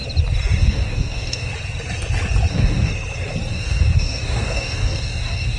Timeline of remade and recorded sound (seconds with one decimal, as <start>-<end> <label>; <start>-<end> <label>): 0.0-0.6 recorded; 0.6-1.5 remade; 1.5-2.5 recorded; 2.5-2.9 remade; 2.9-3.5 recorded; 3.5-5.6 remade